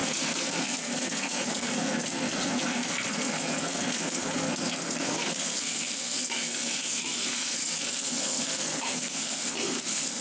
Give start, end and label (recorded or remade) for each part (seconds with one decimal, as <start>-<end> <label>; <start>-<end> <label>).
0.0-10.2 remade